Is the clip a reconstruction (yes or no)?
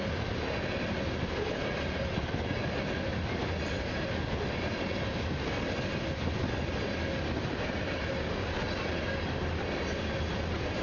no